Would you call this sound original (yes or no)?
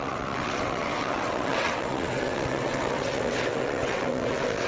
no